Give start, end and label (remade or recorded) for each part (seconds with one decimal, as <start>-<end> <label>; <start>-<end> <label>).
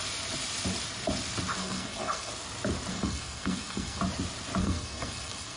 0.0-1.6 recorded; 1.6-2.3 remade; 2.3-2.9 recorded; 2.9-4.0 remade; 4.0-4.6 recorded; 4.6-5.6 remade